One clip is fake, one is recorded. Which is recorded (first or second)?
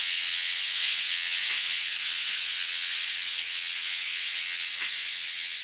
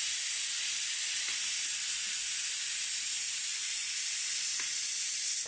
second